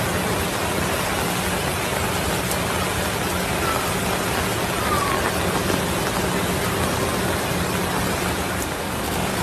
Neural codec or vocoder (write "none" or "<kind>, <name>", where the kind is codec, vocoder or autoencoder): none